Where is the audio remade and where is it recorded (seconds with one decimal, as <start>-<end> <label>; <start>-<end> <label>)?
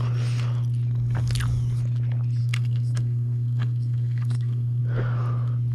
0.0-2.4 recorded; 2.4-4.8 remade; 4.8-5.7 recorded